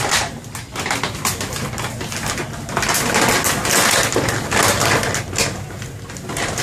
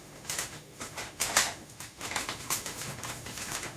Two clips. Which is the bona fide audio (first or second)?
first